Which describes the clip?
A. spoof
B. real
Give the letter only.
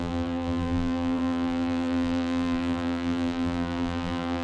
A